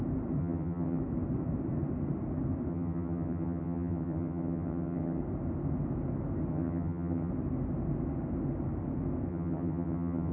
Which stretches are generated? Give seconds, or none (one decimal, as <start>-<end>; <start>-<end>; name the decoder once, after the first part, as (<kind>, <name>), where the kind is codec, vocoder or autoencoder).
0.4-1.0 (vocoder, HiFi-GAN); 2.7-5.2; 6.5-7.3; 9.3-10.3